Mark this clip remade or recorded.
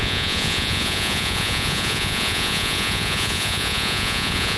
remade